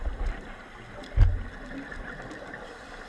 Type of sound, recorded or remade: recorded